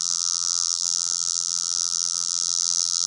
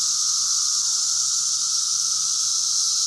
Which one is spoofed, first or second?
first